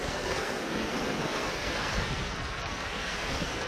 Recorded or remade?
remade